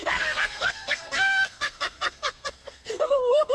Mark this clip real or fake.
fake